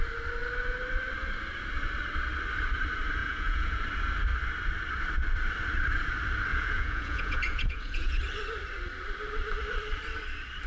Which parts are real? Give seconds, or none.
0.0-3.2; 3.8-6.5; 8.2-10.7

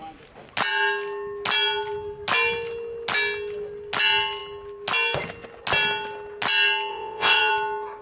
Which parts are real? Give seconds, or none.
0.0-6.9; 7.5-8.0

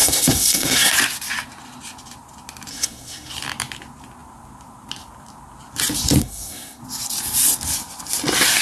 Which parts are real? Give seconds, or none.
0.9-2.7; 3.3-6.2; 6.8-8.6

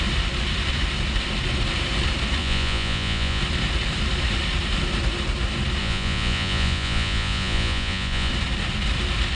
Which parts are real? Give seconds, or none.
0.0-2.4; 3.4-5.8; 8.3-9.3

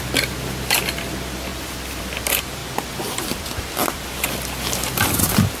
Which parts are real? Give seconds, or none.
1.5-2.0; 2.6-3.4

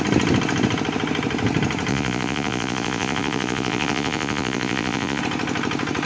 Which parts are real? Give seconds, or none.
0.0-1.9; 5.2-6.1

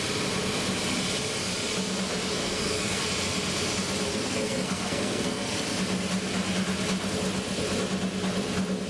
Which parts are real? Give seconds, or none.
0.0-2.4; 3.0-4.1; 5.6-8.9